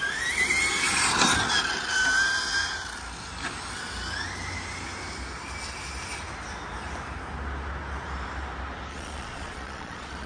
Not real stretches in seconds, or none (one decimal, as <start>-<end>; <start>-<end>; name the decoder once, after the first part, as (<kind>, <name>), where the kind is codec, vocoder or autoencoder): 8.9-10.3 (vocoder, Vocos)